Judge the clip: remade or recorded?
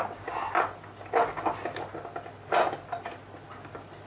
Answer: recorded